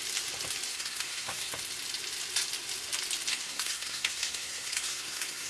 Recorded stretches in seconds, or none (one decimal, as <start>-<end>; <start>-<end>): 0.0-0.7; 1.5-3.3